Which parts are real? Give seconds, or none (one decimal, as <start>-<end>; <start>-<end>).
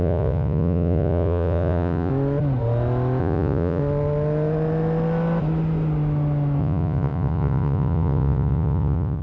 2.1-3.2; 3.8-6.6